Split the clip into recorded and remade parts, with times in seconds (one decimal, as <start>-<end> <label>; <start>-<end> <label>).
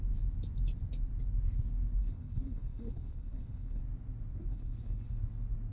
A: 0.0-2.0 recorded; 2.0-3.8 remade; 3.8-4.5 recorded; 4.5-5.2 remade; 5.2-5.7 recorded